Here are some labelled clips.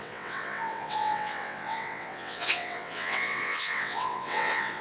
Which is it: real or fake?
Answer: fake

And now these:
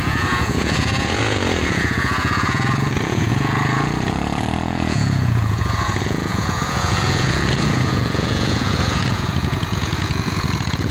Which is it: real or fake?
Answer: fake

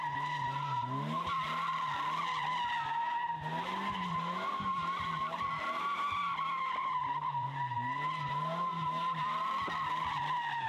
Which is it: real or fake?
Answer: real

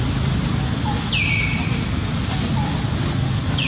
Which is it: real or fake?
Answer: real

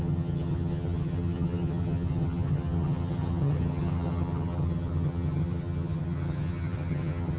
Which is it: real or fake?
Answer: fake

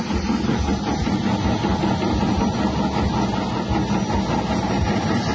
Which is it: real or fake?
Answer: real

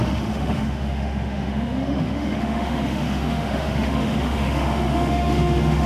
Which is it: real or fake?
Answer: fake